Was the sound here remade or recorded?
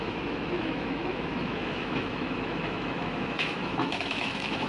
remade